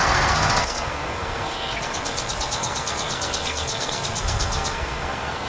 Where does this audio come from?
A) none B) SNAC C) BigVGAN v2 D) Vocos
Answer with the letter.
B